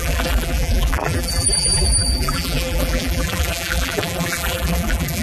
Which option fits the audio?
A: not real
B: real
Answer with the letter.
A